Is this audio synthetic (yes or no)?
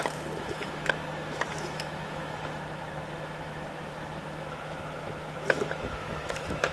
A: yes